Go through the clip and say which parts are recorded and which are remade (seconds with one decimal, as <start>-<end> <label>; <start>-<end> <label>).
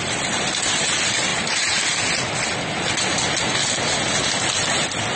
0.0-1.3 recorded; 1.3-1.8 remade; 1.8-5.2 recorded